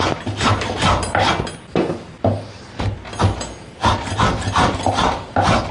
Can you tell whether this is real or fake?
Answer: real